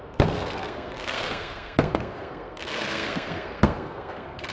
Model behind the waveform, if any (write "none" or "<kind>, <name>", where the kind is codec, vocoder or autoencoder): codec, SNAC